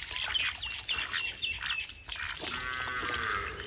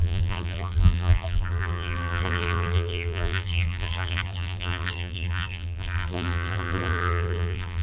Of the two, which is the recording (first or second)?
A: first